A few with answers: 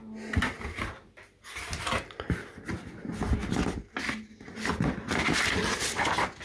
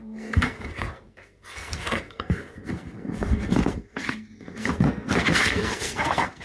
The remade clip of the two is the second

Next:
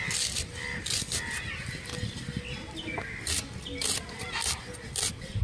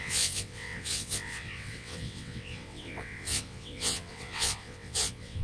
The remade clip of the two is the second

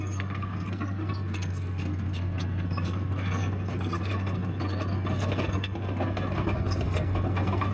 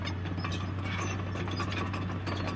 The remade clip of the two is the first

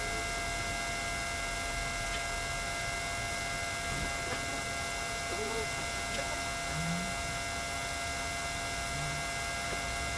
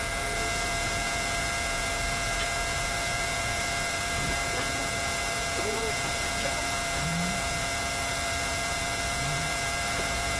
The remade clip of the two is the second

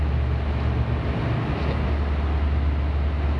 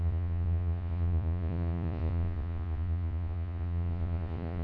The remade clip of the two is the second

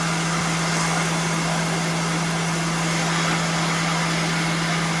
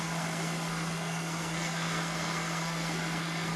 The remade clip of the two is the second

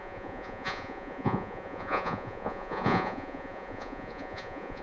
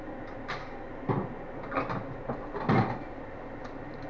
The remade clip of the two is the first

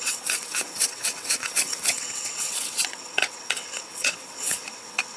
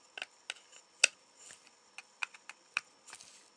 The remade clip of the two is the first